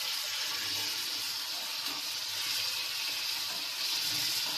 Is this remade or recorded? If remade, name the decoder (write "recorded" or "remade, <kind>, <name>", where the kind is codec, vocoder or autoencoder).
recorded